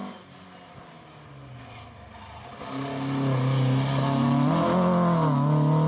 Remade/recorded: recorded